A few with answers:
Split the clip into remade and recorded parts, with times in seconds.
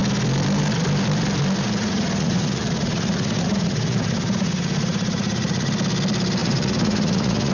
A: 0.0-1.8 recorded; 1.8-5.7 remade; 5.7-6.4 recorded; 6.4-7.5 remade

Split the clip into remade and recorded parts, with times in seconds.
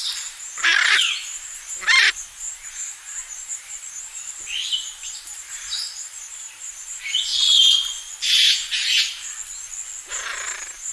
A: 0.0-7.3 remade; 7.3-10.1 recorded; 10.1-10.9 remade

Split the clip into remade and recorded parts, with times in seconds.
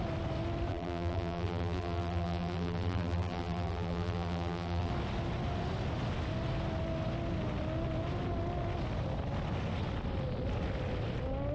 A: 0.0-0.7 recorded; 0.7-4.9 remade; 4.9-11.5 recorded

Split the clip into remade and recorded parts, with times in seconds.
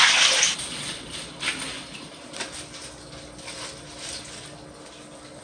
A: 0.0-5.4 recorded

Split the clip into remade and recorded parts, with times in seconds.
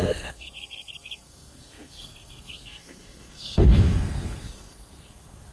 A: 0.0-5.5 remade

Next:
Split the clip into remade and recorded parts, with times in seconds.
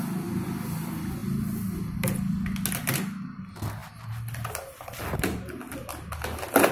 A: 0.0-6.7 recorded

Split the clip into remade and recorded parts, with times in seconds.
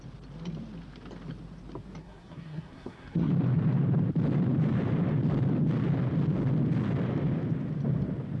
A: 0.0-2.0 recorded; 2.0-3.3 remade; 3.3-8.4 recorded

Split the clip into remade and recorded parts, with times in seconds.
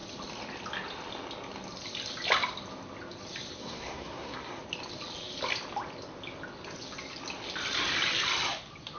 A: 0.0-3.6 recorded; 3.6-4.6 remade; 4.6-9.0 recorded